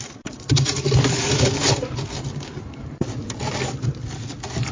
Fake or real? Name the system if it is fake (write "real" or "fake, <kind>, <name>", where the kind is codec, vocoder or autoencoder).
fake, vocoder, BigVGAN v2